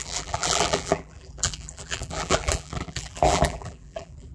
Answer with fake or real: fake